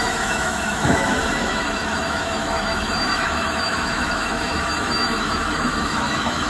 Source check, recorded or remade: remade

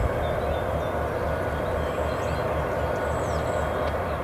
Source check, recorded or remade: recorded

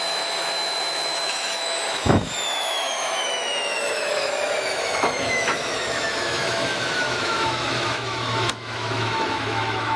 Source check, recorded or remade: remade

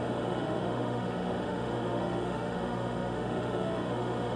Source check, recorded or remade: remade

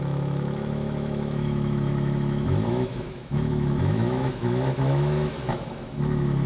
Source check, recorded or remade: remade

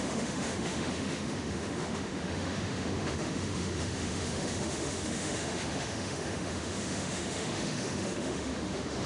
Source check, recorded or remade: remade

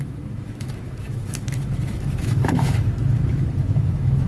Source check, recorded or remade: remade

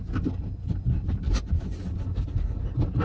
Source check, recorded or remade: recorded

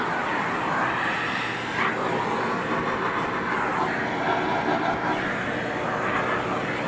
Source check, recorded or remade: recorded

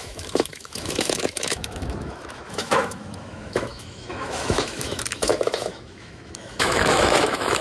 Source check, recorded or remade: remade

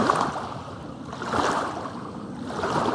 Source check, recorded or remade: recorded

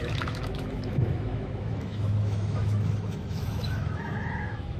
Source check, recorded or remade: remade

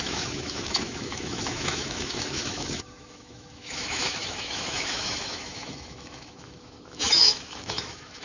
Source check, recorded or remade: remade